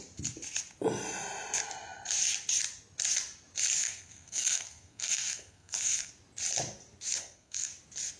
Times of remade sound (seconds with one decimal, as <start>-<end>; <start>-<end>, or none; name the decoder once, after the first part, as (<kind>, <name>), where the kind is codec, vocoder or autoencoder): 3.8-6.1 (codec, SNAC); 7.2-7.7